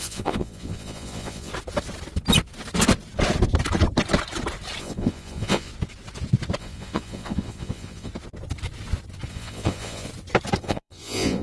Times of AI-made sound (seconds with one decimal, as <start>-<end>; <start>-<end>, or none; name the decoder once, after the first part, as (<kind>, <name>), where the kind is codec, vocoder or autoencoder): 0.0-1.5 (vocoder, Vocos); 4.8-5.7; 6.6-8.1; 9.3-10.1; 10.6-11.4